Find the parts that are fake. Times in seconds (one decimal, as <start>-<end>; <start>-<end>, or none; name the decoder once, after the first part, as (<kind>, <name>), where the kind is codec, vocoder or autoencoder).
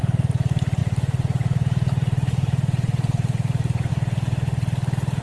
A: 0.8-3.9 (vocoder, BigVGAN v2)